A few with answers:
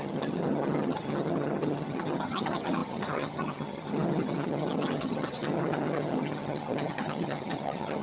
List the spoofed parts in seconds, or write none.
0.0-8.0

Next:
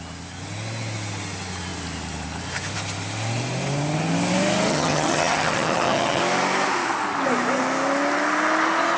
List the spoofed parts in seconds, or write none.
4.7-6.2

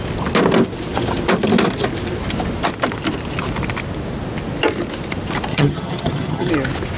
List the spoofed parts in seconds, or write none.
5.5-6.5

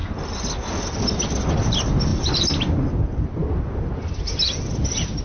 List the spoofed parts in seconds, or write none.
none

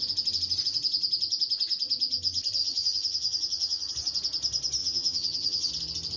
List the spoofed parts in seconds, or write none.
2.6-3.9; 4.8-5.7

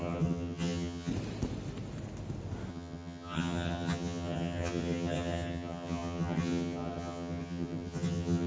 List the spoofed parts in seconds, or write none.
0.0-1.1; 2.7-8.5

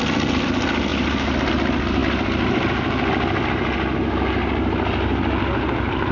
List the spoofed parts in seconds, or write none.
none